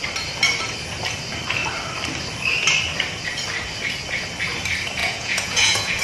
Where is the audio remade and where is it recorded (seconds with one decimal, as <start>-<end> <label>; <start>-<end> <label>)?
0.0-5.0 recorded; 5.0-6.0 remade